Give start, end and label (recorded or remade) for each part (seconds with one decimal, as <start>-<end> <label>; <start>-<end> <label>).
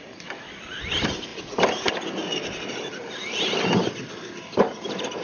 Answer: 0.0-5.2 recorded